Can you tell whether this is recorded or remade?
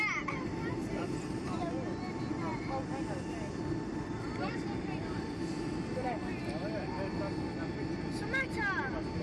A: recorded